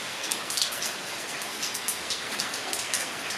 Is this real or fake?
fake